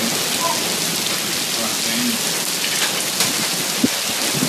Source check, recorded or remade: recorded